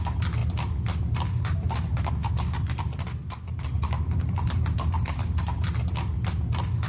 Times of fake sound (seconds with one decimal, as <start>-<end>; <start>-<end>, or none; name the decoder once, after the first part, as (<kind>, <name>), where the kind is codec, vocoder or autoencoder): none